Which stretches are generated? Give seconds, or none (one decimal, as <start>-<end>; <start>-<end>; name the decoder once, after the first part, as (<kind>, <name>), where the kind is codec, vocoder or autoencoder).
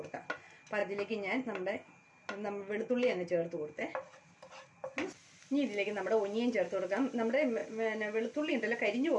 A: none